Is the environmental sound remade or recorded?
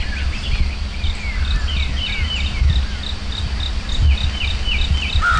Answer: recorded